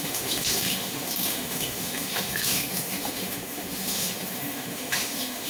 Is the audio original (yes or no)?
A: no